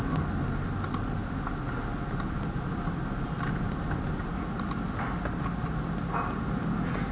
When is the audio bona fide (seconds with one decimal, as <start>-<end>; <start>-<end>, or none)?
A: 0.0-7.1